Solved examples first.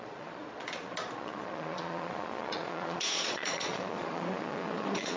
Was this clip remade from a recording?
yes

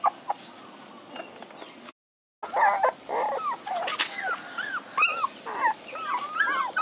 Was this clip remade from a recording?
no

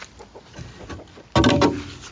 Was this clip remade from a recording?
no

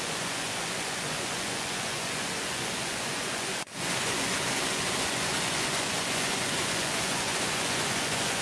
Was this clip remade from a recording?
yes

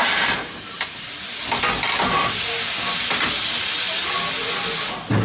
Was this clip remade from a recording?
no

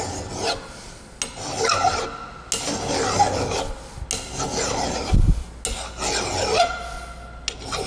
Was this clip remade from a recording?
no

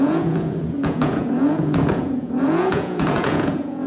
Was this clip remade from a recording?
yes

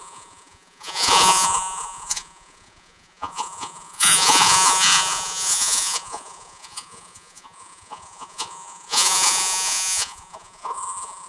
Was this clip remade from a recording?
yes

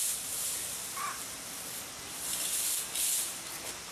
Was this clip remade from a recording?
no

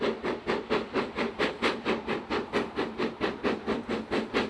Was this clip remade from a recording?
no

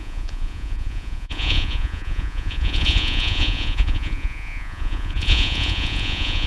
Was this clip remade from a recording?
yes